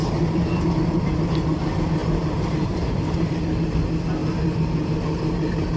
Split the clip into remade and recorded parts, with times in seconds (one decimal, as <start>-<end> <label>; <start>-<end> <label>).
0.0-0.6 remade; 0.6-2.0 recorded; 2.0-3.3 remade; 3.3-4.2 recorded; 4.2-4.9 remade; 4.9-5.8 recorded